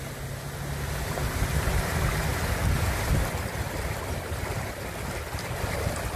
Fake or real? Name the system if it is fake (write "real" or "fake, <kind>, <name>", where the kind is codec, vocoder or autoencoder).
real